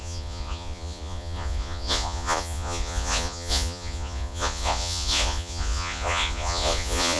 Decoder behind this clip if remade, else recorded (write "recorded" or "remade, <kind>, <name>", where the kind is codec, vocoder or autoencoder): remade, vocoder, Vocos